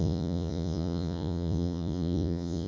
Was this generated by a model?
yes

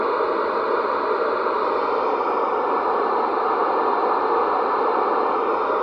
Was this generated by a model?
no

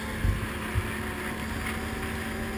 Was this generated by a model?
no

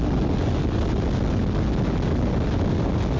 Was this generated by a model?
no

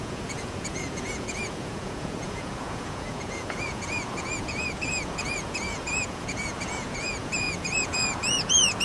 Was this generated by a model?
yes